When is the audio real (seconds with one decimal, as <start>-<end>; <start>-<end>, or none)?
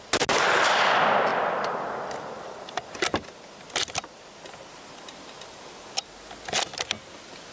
0.0-1.3; 5.8-7.5